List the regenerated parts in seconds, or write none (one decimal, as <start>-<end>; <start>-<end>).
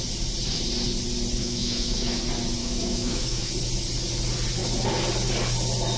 1.4-2.2; 2.6-3.5